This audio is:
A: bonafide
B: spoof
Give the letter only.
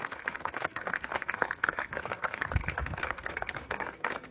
B